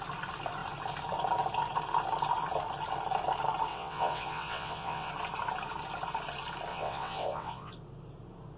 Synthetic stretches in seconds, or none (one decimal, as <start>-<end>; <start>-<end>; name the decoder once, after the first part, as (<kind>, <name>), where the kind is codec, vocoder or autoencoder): 3.7-5.1 (vocoder, WaveNeXt); 6.7-7.7

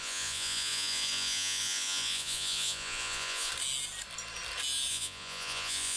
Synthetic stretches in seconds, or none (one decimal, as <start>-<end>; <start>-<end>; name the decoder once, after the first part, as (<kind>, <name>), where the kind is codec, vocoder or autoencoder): 0.0-3.5 (vocoder, Vocos); 4.9-6.0

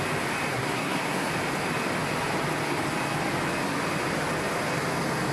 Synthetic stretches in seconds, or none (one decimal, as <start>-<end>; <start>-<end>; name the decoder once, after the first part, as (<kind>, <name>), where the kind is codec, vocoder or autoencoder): 0.5-1.3 (codec, SNAC)

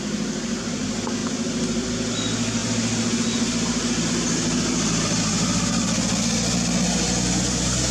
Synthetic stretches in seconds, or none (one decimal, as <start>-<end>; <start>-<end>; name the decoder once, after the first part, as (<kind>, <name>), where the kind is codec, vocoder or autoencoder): 1.2-2.1 (vocoder, BigVGAN v2)

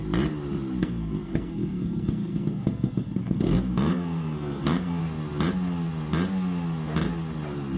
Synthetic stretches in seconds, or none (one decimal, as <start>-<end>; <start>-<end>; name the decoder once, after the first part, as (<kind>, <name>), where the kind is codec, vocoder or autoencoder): 0.8-5.0 (codec, SNAC)